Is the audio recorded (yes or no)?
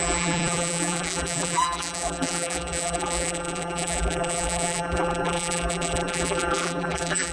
no